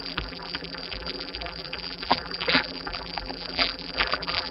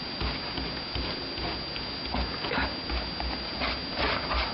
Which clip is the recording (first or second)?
second